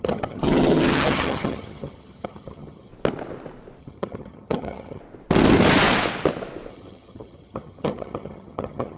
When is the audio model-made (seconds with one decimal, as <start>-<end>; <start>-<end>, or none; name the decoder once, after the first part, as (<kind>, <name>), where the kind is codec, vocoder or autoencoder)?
0.0-2.9 (vocoder, HiFi-GAN); 3.8-5.0; 6.7-9.0